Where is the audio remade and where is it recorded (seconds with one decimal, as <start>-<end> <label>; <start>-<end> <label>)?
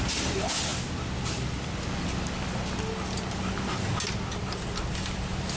0.0-5.6 recorded